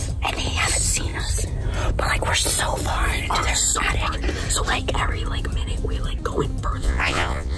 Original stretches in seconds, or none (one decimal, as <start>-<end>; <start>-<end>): 0.0-6.8